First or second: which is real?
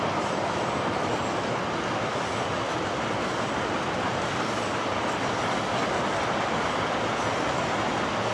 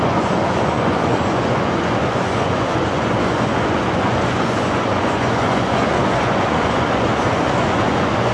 first